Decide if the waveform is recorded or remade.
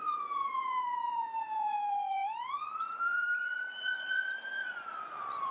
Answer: remade